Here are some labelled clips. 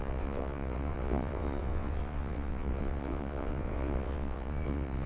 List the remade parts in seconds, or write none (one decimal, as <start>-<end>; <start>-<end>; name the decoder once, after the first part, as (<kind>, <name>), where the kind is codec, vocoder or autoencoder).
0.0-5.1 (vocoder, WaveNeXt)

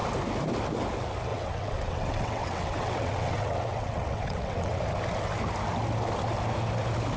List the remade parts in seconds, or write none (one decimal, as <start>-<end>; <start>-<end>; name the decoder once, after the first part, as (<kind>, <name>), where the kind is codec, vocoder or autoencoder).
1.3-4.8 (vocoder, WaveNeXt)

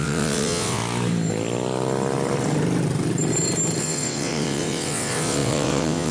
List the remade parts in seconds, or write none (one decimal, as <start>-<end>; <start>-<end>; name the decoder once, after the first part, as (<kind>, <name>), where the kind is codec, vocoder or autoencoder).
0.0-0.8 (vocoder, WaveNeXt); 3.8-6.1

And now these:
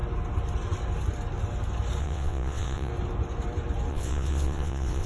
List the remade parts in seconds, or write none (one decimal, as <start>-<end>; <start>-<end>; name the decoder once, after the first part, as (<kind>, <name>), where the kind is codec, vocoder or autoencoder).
2.0-2.9 (vocoder, WaveNeXt); 3.9-5.1

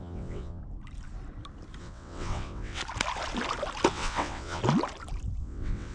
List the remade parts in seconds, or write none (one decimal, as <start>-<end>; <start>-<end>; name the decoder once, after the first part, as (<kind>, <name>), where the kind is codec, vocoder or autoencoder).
0.0-0.6 (vocoder, WaveNeXt); 1.8-2.8; 3.9-4.6; 5.4-5.9

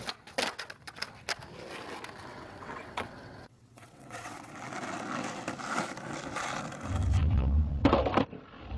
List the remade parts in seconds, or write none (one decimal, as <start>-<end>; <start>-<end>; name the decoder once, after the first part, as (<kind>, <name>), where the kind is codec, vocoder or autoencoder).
2.3-4.5 (vocoder, WaveNeXt); 7.2-7.8

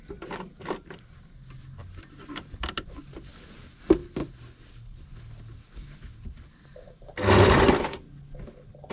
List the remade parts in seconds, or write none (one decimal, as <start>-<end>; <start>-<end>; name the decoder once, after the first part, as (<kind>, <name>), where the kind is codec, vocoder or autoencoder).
none

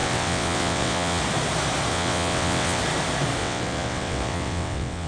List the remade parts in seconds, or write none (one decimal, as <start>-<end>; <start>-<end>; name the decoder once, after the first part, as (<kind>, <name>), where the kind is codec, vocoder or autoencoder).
0.0-1.2 (vocoder, WaveNeXt); 1.9-2.8; 3.4-5.1